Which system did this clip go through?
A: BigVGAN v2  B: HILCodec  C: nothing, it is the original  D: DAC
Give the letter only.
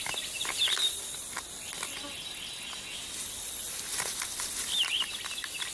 C